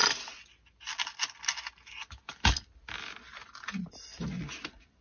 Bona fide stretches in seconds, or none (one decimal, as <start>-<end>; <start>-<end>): 0.0-5.0